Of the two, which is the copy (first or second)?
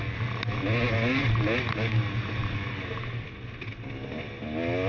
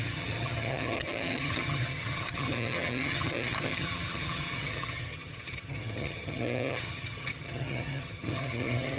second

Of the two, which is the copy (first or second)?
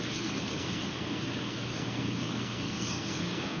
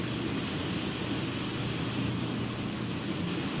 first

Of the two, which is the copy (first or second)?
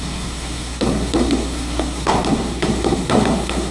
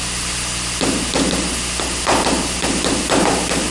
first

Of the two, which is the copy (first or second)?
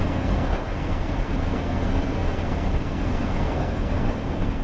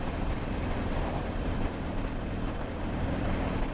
first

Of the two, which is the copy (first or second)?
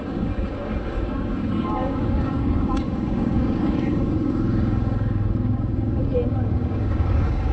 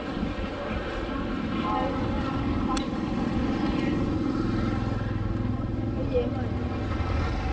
first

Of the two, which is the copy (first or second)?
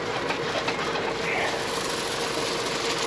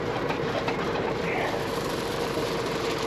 second